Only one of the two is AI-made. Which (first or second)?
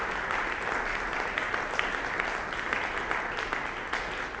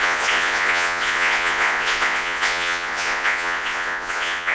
second